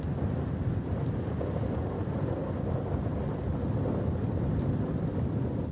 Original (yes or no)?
yes